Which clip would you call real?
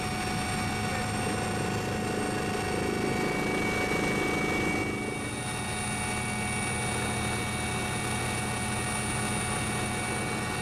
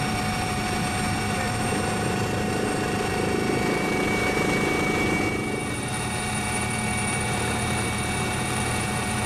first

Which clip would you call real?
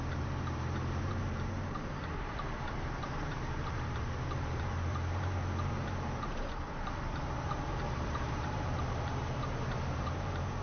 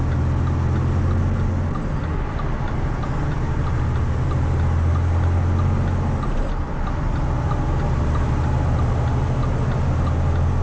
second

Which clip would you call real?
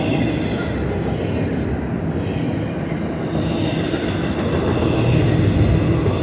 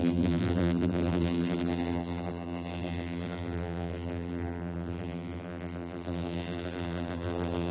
first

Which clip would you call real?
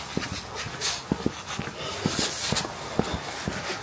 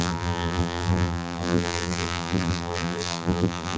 first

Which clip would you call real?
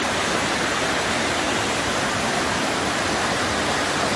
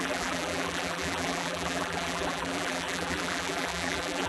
first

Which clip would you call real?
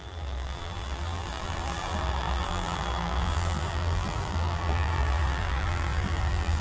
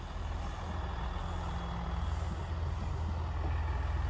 second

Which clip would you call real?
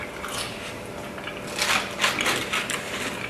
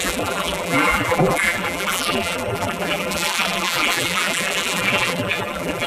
first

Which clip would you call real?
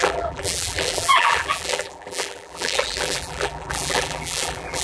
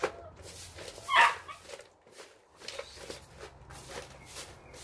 second